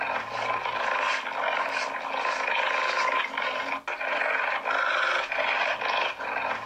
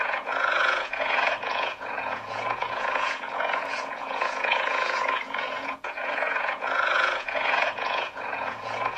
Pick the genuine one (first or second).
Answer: first